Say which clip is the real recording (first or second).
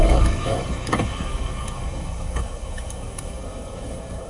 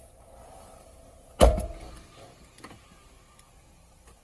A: second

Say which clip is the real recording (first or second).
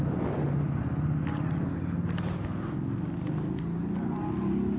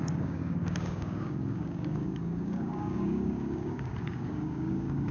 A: first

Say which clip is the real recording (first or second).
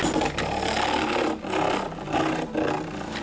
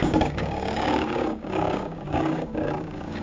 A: first